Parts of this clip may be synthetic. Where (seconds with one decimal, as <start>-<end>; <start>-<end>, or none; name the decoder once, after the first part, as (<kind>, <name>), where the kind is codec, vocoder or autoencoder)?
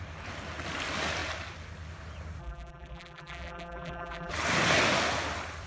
2.4-4.3 (vocoder, BigVGAN v2)